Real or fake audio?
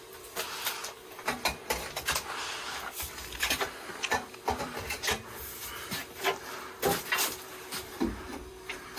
fake